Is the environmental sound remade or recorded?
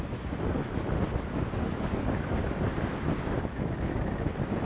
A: recorded